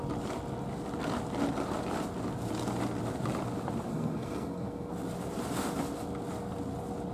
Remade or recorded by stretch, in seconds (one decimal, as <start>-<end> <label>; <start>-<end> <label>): 0.0-3.9 recorded; 3.9-4.9 remade; 4.9-7.1 recorded